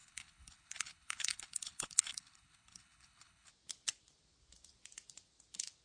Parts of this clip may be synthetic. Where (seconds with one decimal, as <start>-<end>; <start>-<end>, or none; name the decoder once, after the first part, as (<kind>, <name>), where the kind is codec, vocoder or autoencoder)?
0.0-3.5 (codec, HILCodec)